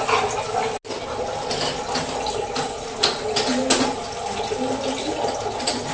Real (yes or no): yes